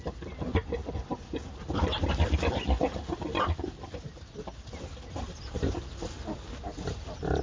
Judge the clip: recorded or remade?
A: recorded